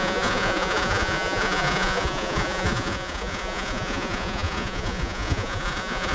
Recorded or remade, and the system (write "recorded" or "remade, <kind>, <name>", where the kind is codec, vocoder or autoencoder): remade, vocoder, Vocos